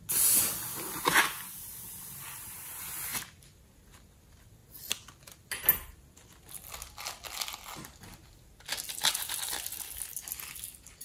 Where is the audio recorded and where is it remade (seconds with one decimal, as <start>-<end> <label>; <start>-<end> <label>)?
0.0-11.0 recorded